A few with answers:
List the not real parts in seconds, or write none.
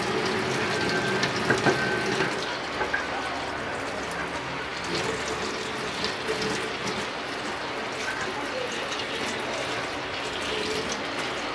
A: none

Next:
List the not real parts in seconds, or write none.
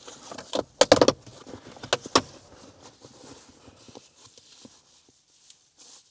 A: none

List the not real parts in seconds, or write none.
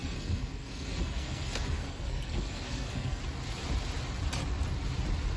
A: 0.0-3.2 (codec, SNAC)